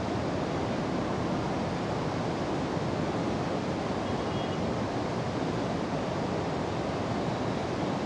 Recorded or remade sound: recorded